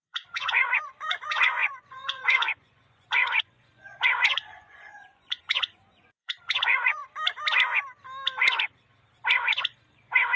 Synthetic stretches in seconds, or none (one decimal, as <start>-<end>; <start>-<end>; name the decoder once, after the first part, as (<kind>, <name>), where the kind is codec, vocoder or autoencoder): 0.0-7.0 (vocoder, Vocos); 9.9-10.4